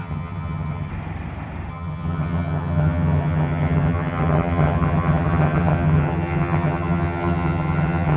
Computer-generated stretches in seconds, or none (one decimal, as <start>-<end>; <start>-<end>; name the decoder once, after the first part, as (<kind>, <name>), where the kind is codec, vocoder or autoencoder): 0.0-0.9 (vocoder, HiFi-GAN); 1.7-8.2